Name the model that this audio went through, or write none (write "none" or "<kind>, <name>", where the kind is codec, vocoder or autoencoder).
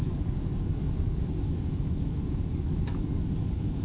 codec, DAC